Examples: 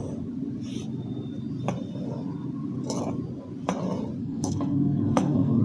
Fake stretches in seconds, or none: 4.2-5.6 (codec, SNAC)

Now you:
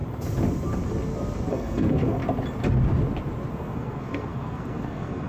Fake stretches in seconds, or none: 1.5-2.2 (codec, SNAC); 3.5-5.3

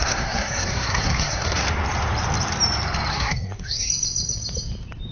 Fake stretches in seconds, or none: 0.0-1.6 (codec, SNAC); 3.1-3.9

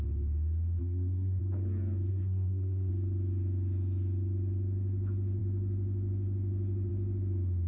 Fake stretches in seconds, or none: 0.8-1.4 (codec, SNAC); 2.1-2.9

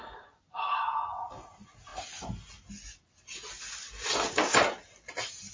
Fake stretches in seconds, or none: none

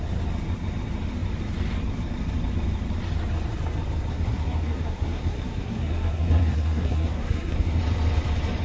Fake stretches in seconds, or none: 4.1-7.8 (codec, SNAC)

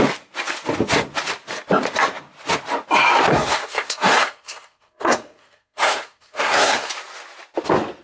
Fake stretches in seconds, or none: 3.3-6.9 (codec, SNAC)